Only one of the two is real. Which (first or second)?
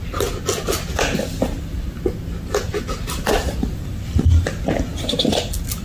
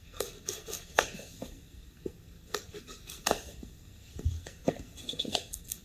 first